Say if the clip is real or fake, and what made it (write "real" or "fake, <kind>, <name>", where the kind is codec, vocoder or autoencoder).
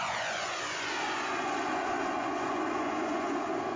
fake, vocoder, Vocos